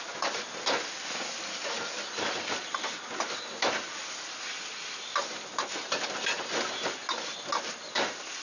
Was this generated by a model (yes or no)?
no